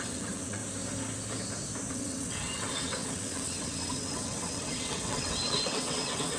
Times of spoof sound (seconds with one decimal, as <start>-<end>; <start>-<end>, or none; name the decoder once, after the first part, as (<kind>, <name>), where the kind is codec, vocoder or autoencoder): 0.0-0.6 (vocoder, WaveNeXt); 1.9-6.4

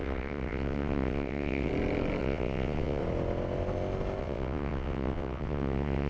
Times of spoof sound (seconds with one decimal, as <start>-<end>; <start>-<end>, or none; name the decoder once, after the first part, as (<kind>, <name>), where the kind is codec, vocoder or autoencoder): 0.0-1.7 (vocoder, WaveNeXt); 2.2-3.0; 4.2-6.1

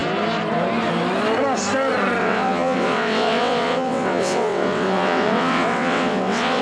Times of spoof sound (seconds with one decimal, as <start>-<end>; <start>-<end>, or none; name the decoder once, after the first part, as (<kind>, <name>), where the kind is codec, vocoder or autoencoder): 2.2-6.6 (vocoder, WaveNeXt)

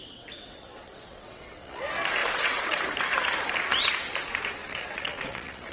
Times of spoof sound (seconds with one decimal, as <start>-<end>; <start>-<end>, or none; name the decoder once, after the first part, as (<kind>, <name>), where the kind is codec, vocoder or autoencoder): 0.0-1.8 (vocoder, WaveNeXt); 2.2-2.8; 4.6-5.7

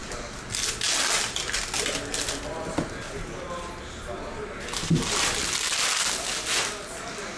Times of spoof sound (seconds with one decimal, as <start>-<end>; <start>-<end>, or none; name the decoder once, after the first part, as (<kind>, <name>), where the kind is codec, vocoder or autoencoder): none